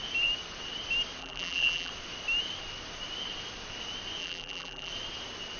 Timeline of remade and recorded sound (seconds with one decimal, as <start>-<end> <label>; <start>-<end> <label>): 0.0-1.2 recorded; 1.2-1.9 remade; 1.9-4.2 recorded; 4.2-4.9 remade; 4.9-5.6 recorded